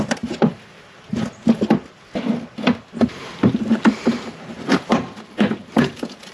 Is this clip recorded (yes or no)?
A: no